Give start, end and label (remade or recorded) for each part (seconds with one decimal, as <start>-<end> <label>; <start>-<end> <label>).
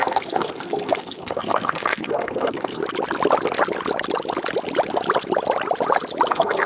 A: 0.0-2.8 remade; 2.8-6.3 recorded; 6.3-6.7 remade